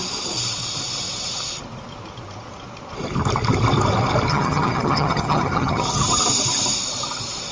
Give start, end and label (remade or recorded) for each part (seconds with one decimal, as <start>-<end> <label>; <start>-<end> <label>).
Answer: 0.0-4.3 recorded; 4.3-6.2 remade; 6.2-7.5 recorded